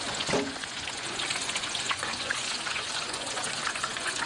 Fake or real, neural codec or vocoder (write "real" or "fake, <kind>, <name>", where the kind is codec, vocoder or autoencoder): fake, vocoder, Vocos